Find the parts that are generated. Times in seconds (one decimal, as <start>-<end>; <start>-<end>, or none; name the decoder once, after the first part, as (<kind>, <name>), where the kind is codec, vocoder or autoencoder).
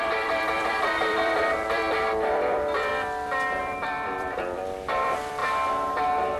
0.0-1.8 (vocoder, BigVGAN v2); 2.3-2.9; 3.6-5.4